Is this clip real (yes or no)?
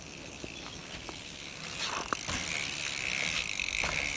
yes